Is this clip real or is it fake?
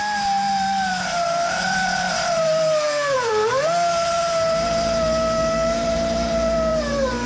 fake